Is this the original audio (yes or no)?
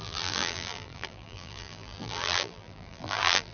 no